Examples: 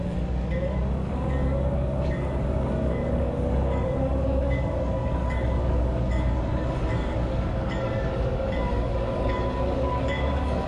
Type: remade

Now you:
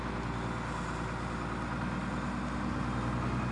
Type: recorded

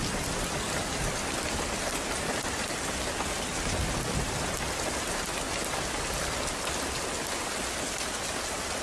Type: recorded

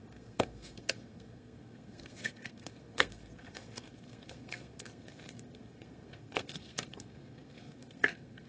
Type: remade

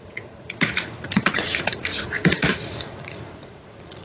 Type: remade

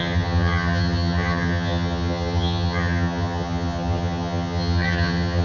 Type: remade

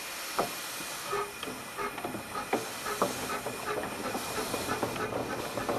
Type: recorded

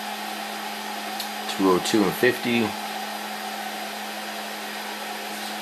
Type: recorded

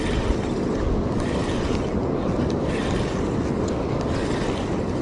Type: recorded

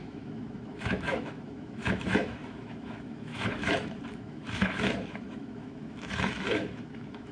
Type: remade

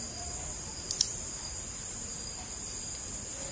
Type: recorded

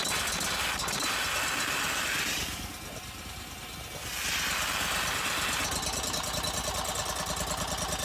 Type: recorded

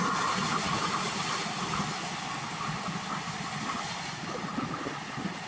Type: recorded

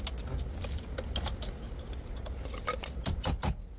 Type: recorded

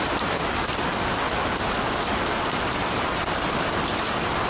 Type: recorded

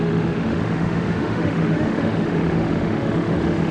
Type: remade